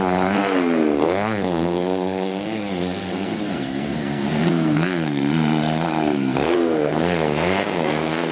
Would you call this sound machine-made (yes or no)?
yes